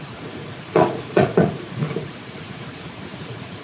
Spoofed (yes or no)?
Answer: yes